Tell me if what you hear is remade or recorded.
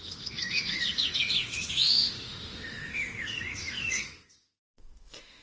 remade